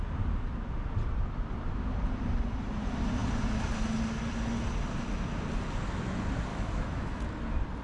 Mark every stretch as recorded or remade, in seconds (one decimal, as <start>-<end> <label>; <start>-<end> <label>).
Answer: 0.0-6.5 recorded; 6.5-7.2 remade; 7.2-7.8 recorded